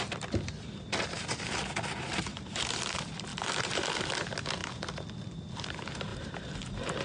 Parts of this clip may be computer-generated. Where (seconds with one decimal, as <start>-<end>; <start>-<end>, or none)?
2.3-2.8; 3.3-3.9; 6.1-7.0